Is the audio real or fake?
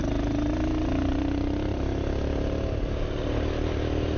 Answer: real